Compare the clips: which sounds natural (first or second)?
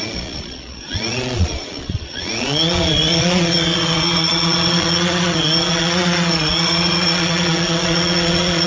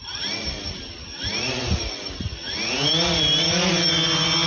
second